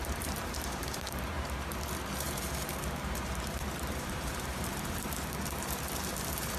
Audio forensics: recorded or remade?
remade